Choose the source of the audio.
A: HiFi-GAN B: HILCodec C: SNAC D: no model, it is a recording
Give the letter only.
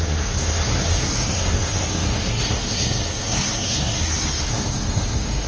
C